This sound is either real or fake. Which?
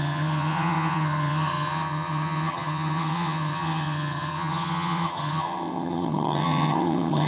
fake